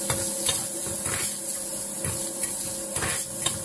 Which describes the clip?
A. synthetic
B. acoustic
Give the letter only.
B